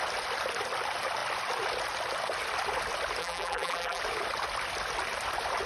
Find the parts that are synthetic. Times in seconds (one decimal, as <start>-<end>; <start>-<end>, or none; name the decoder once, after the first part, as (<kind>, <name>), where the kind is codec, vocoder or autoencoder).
3.2-4.0 (vocoder, BigVGAN v2)